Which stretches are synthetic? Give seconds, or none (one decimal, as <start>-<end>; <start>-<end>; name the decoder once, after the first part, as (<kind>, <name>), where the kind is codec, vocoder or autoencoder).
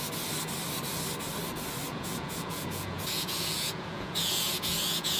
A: 1.9-5.2 (vocoder, Vocos)